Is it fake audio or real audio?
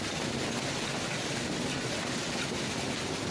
real